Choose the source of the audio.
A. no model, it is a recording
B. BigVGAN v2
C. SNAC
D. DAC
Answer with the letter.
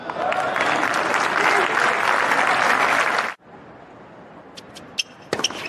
A